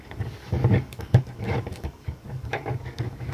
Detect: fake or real fake